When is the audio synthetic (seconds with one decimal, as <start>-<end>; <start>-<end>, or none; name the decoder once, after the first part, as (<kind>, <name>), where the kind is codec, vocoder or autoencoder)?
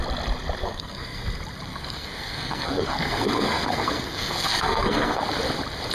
0.6-1.2 (codec, SNAC); 1.7-5.2